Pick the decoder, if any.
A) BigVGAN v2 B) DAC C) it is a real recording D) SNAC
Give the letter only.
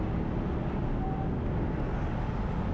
C